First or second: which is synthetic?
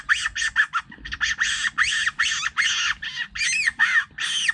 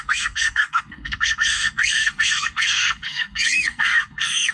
second